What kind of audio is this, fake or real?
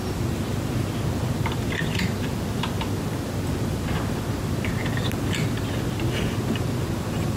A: real